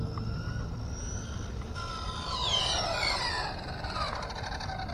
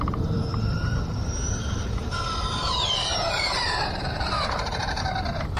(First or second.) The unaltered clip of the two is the first